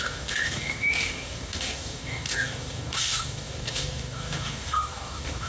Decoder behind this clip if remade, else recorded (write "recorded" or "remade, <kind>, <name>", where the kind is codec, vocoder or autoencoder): remade, codec, DAC